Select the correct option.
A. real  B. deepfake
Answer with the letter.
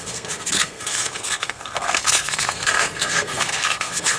B